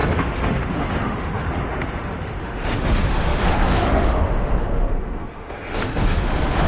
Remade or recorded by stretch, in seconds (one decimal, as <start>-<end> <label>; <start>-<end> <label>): 0.0-6.7 remade